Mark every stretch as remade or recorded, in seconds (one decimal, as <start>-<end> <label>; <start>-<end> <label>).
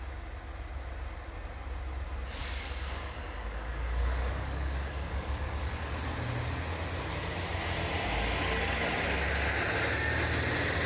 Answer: 0.0-2.4 recorded; 2.4-5.9 remade; 5.9-10.9 recorded